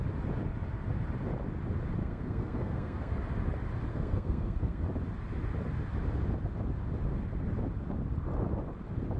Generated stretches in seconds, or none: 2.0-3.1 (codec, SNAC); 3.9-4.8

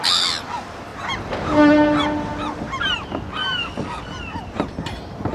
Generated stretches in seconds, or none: 3.4-4.0 (codec, DAC)

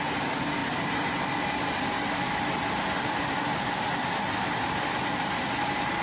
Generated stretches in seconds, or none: 0.6-1.3 (vocoder, BigVGAN v2)

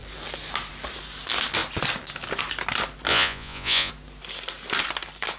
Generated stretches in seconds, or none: 3.1-3.9 (vocoder, Vocos)